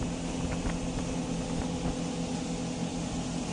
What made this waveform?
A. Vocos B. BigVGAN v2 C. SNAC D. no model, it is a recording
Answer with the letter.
D